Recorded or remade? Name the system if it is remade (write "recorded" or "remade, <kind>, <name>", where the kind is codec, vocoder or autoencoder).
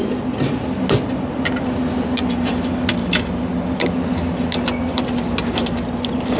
recorded